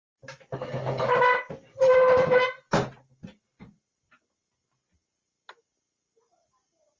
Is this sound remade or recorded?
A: recorded